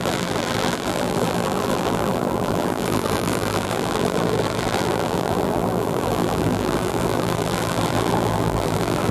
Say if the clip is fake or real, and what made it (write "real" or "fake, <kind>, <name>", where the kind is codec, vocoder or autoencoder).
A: fake, vocoder, BigVGAN v2